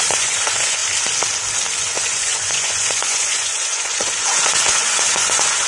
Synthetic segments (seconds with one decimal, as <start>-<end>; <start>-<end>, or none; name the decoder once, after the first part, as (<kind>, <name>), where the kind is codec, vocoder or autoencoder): 0.0-0.8 (vocoder, Vocos); 1.8-5.7